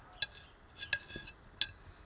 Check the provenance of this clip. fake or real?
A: real